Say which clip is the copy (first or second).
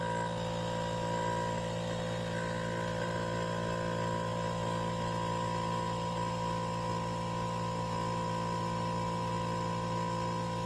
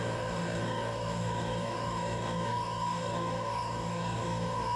second